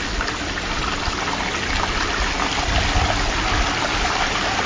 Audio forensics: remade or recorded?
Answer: recorded